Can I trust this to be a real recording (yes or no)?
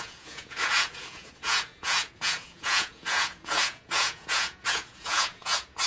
no